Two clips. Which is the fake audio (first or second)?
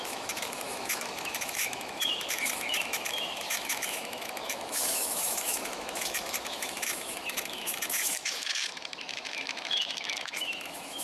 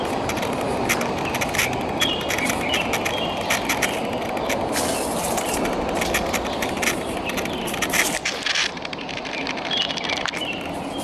first